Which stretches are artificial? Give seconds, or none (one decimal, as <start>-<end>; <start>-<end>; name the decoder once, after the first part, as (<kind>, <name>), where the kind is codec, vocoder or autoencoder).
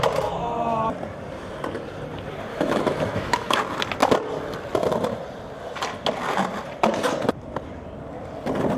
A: 2.5-3.6 (autoencoder, DAC-VAE)